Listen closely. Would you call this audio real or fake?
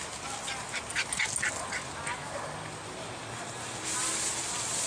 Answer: real